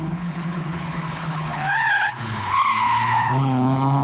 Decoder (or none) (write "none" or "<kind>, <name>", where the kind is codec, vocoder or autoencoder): codec, HILCodec